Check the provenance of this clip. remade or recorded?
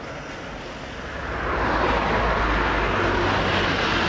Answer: recorded